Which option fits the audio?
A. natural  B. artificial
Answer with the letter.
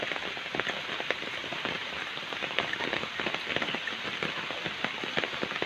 A